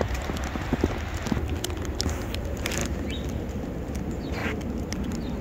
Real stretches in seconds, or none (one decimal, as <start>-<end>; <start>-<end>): 0.0-5.4